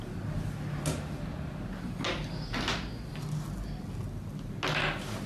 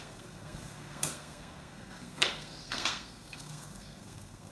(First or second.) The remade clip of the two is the second